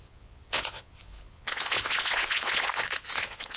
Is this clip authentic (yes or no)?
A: no